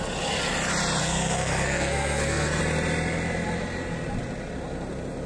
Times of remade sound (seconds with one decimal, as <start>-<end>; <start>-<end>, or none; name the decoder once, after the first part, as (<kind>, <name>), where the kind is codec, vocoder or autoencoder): 1.0-2.6 (codec, SNAC)